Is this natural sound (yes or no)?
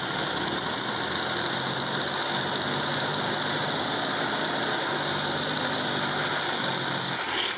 yes